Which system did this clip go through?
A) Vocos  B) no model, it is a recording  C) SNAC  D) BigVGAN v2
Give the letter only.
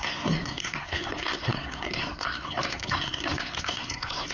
C